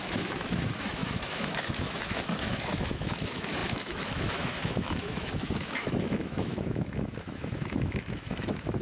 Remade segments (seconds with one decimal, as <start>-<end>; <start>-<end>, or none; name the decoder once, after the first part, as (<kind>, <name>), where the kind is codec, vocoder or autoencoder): 0.0-8.8 (autoencoder, DAC-VAE)